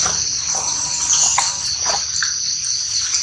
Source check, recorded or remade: recorded